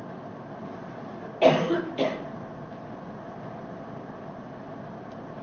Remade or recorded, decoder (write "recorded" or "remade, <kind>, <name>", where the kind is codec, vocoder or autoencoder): recorded